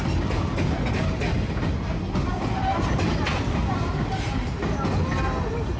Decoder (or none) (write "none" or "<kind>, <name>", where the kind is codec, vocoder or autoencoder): none